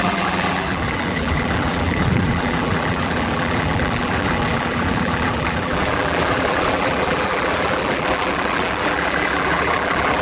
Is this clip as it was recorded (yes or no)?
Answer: no